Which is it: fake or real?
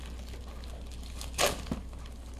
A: real